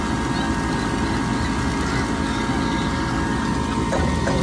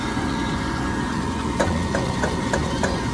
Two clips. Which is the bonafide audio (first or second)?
first